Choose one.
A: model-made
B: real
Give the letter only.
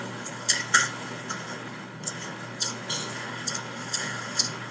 A